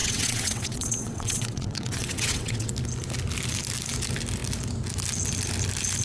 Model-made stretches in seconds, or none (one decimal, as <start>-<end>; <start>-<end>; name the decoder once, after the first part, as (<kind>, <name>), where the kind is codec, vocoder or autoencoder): 0.0-2.7 (vocoder, WaveNeXt)